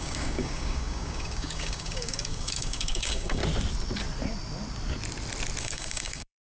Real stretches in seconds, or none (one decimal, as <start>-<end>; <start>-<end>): 3.4-5.6